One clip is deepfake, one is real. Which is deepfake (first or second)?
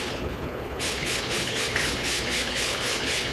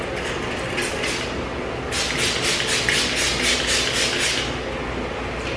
first